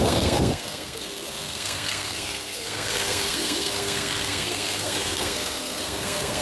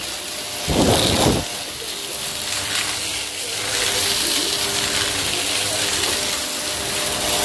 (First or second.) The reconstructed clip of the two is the first